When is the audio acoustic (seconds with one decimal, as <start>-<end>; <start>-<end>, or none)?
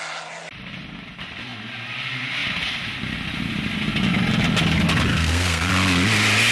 0.0-5.1; 5.7-6.5